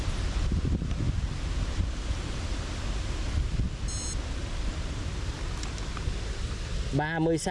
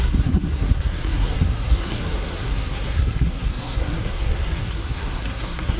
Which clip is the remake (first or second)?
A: second